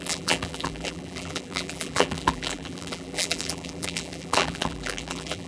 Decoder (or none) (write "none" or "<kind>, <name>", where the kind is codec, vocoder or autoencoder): vocoder, BigVGAN v2